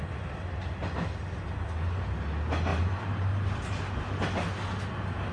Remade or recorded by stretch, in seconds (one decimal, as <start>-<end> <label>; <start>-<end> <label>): 0.0-2.7 recorded; 2.7-3.3 remade; 3.3-5.3 recorded